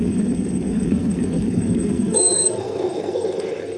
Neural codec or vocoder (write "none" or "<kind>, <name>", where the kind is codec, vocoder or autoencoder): codec, SNAC